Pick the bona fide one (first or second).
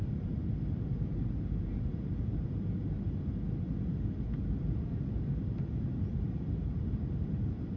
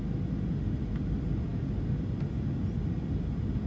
second